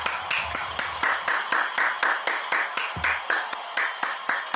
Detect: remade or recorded recorded